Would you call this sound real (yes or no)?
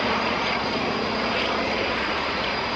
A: no